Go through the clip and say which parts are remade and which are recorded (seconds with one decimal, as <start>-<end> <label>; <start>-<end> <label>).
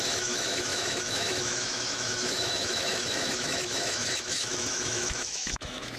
0.0-6.0 remade